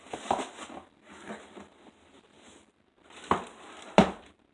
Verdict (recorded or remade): recorded